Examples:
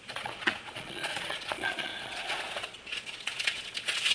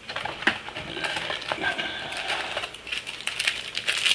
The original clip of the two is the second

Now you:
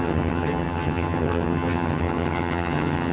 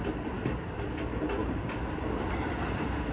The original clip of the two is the second